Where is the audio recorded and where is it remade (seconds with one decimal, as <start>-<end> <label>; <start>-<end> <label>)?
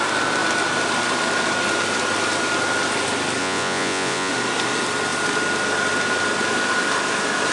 0.0-3.4 recorded; 3.4-4.3 remade; 4.3-7.5 recorded